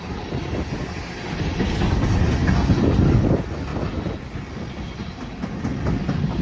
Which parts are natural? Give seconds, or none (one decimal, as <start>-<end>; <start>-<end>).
0.0-6.4